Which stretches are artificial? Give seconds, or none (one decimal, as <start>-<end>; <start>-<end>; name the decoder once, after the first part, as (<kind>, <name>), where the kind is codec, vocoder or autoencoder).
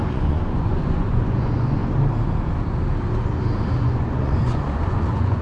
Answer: 0.0-1.8 (vocoder, Vocos); 3.8-5.4